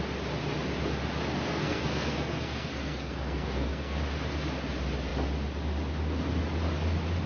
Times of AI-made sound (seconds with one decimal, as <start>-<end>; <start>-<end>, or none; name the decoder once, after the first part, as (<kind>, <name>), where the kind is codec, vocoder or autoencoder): 1.5-4.0 (codec, SNAC)